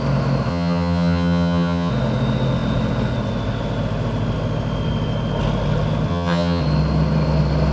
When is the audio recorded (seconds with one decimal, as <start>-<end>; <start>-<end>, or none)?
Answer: 0.0-0.5; 1.9-6.1; 6.6-7.7